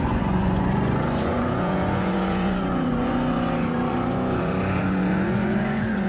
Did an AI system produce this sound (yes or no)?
yes